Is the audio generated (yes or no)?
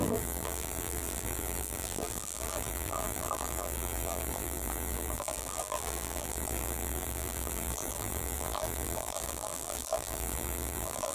yes